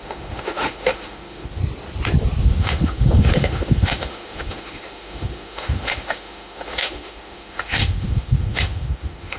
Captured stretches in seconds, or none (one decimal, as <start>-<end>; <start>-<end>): 1.6-2.4